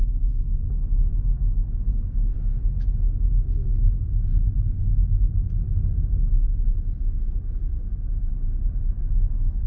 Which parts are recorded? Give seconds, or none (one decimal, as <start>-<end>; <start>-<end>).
0.0-9.7